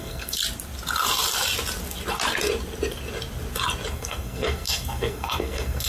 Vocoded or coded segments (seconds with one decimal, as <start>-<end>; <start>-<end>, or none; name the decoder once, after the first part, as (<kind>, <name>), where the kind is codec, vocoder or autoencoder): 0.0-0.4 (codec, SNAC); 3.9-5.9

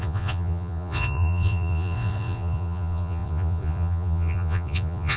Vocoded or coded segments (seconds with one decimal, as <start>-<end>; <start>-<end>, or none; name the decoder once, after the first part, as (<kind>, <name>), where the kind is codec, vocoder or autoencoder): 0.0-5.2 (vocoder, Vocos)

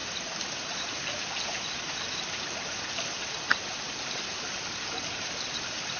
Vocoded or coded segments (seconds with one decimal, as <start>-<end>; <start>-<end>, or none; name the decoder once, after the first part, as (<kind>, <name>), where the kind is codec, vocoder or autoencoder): none

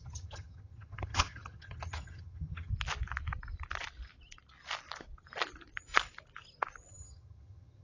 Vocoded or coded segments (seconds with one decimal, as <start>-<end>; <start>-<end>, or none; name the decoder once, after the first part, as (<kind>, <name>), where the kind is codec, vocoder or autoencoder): 0.0-2.7 (vocoder, HiFi-GAN); 6.9-7.8

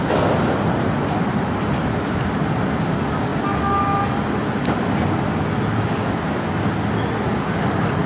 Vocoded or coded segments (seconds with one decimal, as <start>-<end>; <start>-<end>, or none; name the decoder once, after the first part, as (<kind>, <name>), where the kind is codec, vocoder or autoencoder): none

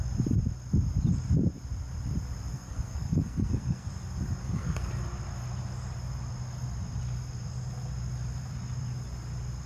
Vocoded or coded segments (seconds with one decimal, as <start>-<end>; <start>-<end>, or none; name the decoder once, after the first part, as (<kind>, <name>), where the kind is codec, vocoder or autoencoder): 2.5-3.9 (codec, SNAC); 4.4-4.9

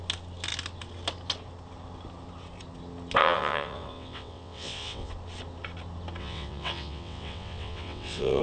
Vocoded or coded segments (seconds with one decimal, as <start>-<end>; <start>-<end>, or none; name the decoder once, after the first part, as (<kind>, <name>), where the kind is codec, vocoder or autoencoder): 3.2-5.1 (vocoder, WaveNeXt); 6.2-8.4

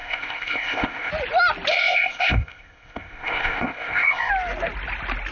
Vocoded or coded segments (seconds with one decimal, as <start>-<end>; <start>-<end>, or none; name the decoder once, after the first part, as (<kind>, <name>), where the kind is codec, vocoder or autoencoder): 0.0-1.1 (codec, ZipCodec); 1.7-4.3